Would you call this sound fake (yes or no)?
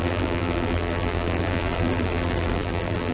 yes